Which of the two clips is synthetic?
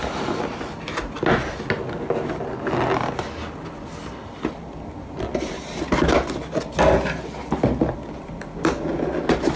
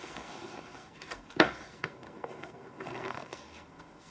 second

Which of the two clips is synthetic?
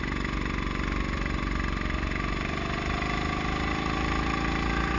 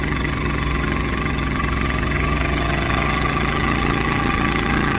second